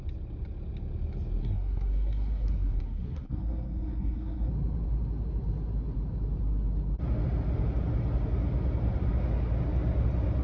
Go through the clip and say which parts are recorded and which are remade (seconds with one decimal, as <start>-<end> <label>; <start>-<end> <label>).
0.0-1.4 recorded; 1.4-4.5 remade; 4.5-10.4 recorded